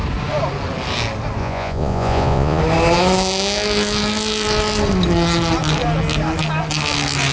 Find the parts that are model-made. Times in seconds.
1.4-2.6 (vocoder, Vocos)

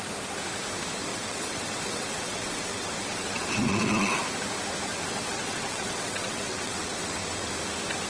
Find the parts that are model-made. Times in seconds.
1.1-4.2 (vocoder, WaveNeXt); 4.9-7.5

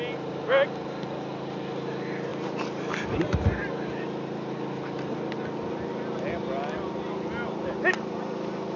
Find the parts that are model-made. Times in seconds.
none